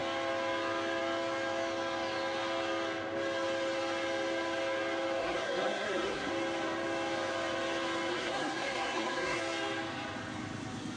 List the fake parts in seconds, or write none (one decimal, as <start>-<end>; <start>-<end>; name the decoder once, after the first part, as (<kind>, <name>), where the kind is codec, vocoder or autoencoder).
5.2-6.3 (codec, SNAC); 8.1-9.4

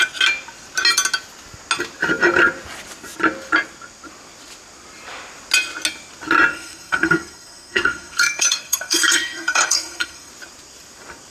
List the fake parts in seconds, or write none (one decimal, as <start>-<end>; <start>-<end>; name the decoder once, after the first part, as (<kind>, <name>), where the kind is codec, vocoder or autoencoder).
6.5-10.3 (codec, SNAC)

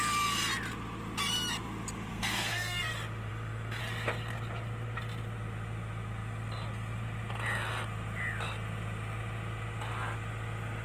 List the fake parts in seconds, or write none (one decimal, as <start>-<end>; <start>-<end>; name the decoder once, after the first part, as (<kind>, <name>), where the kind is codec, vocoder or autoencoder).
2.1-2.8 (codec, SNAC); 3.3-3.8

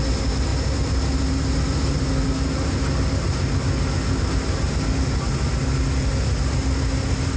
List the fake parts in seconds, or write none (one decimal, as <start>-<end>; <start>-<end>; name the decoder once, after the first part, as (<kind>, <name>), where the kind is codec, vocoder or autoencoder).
none